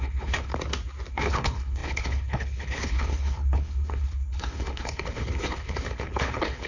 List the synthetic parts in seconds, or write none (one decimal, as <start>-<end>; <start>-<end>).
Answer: 0.0-0.5; 1.1-6.7

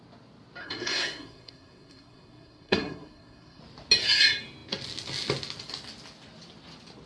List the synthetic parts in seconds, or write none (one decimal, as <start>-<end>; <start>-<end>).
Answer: 0.6-3.6

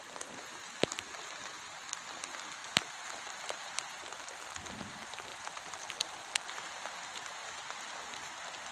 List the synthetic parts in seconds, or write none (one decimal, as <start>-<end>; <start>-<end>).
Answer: 2.6-3.8; 5.3-6.8

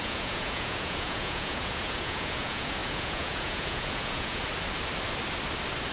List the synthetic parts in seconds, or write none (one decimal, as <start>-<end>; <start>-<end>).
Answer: 0.0-4.4

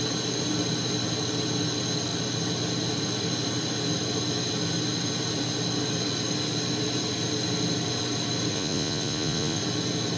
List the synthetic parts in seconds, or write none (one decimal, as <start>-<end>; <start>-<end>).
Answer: 8.5-9.6

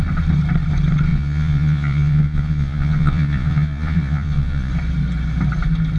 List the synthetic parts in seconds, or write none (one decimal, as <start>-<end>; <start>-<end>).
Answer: 1.1-4.7

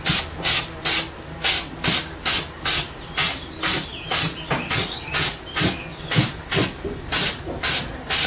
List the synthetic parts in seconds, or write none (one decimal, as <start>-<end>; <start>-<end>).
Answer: 0.0-3.9; 4.4-8.3